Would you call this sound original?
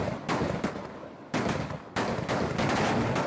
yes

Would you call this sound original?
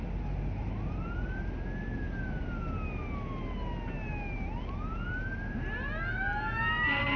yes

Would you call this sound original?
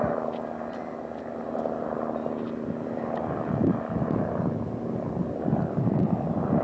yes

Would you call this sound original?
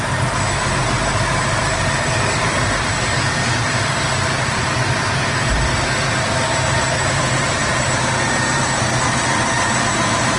no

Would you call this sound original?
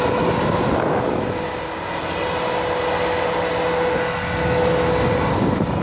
yes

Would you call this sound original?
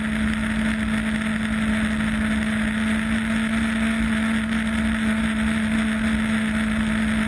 yes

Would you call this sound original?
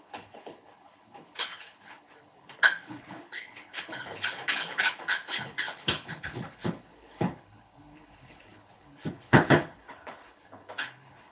no